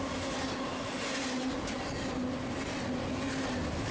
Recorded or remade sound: recorded